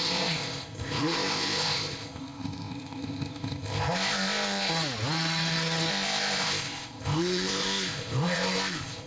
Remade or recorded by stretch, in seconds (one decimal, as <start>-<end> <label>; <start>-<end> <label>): 0.0-4.7 remade; 4.7-5.9 recorded; 5.9-9.1 remade